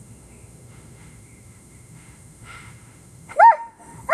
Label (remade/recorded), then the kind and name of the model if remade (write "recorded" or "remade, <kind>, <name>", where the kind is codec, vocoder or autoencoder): remade, autoencoder, DAC-VAE